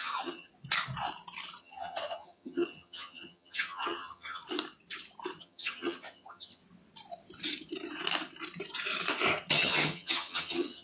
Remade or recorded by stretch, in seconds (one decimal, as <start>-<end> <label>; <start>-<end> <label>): 0.0-0.5 remade; 0.5-1.6 recorded; 1.6-4.4 remade; 4.4-5.4 recorded; 5.4-6.6 remade; 6.6-9.5 recorded; 9.5-10.8 remade